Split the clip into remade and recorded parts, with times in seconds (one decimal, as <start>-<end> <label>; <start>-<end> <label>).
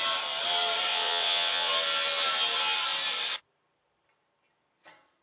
0.0-0.9 recorded; 0.9-1.7 remade; 1.7-5.2 recorded